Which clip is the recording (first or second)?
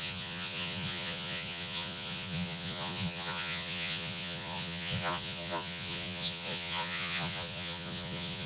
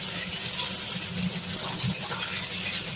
second